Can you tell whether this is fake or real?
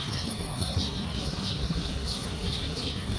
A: fake